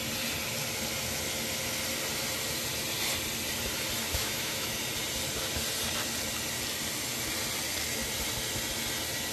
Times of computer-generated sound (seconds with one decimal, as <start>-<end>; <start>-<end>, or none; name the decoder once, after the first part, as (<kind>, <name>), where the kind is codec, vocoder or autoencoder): 4.1-4.7 (autoencoder, DAC-VAE)